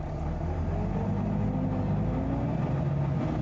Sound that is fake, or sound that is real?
real